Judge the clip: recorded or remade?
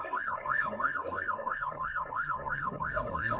remade